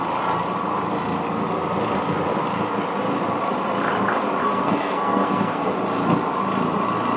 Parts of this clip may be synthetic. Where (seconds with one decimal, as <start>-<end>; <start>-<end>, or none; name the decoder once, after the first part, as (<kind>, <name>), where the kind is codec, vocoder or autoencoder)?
4.4-5.7 (codec, SNAC)